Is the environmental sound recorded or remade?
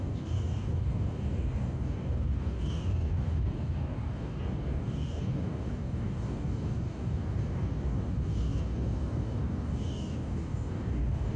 remade